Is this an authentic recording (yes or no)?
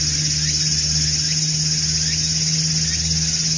yes